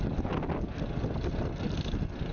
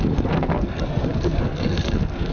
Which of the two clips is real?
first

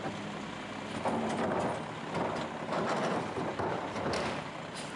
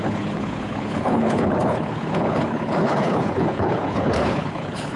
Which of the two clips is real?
first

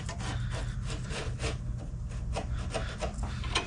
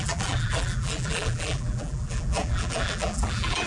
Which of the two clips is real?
first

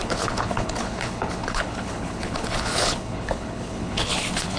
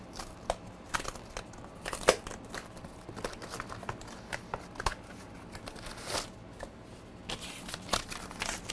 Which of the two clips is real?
second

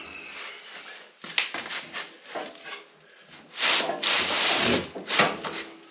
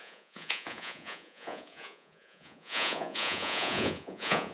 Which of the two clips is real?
first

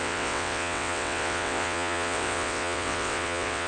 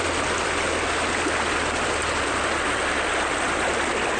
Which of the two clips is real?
second